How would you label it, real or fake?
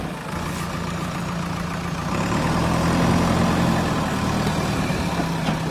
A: real